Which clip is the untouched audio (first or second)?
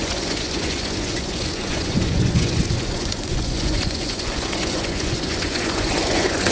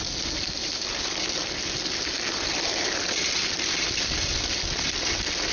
second